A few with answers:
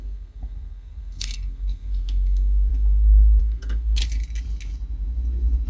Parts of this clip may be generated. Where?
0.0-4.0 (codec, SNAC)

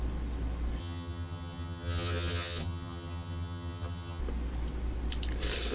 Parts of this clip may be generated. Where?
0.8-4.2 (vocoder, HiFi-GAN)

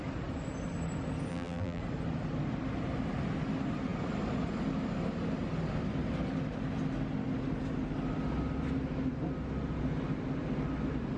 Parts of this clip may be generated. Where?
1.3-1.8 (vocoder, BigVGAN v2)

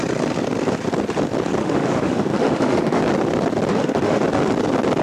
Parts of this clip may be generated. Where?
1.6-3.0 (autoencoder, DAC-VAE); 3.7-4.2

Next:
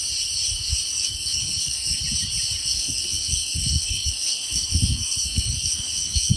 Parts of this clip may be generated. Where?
0.9-2.0 (codec, SNAC); 2.6-6.4